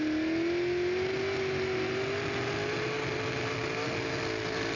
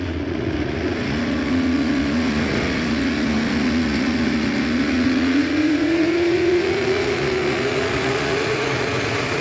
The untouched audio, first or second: first